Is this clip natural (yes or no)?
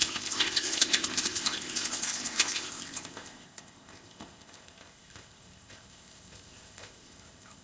no